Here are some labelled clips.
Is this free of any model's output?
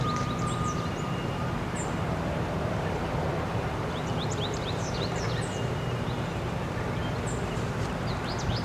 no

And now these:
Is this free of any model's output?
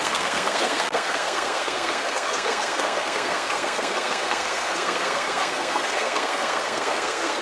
no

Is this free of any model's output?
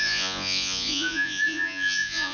no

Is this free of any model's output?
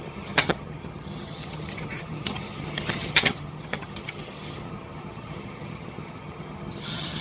no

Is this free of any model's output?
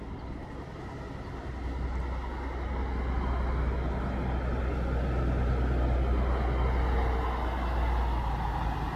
yes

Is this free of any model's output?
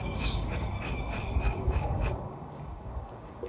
no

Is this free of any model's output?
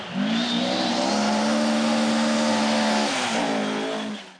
yes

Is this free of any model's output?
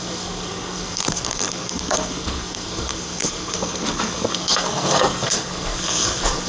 no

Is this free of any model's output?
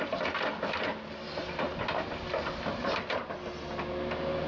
yes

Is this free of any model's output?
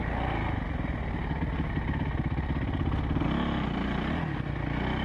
yes